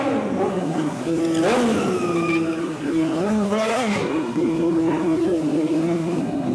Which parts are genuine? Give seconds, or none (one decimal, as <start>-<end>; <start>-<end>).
0.0-0.5; 1.2-2.6